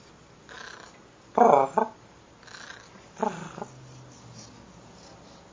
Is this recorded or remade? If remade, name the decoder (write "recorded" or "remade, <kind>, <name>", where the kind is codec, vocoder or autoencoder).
recorded